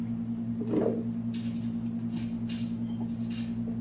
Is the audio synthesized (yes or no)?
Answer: no